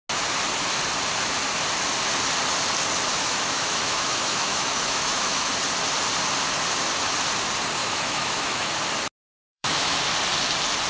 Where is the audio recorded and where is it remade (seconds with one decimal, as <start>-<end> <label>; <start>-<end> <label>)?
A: 0.0-3.1 recorded; 3.1-5.5 remade; 5.5-7.8 recorded; 7.8-8.7 remade; 8.7-9.3 recorded; 9.3-10.0 remade; 10.0-10.9 recorded